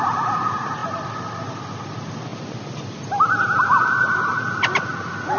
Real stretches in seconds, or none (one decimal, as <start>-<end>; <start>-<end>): 0.0-5.4